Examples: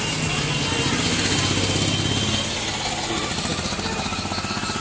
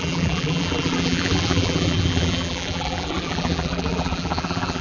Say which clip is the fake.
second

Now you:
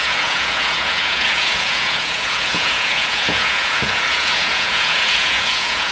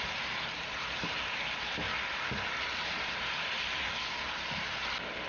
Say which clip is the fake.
first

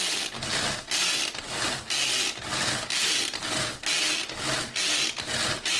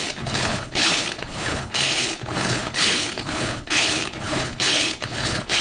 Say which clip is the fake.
second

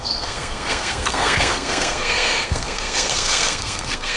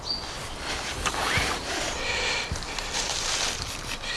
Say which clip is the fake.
first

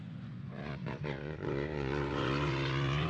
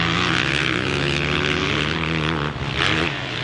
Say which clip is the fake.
first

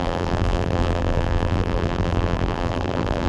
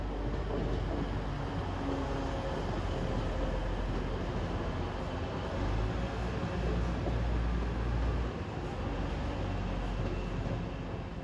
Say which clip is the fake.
first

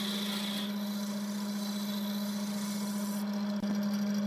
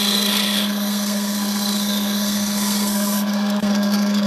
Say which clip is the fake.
second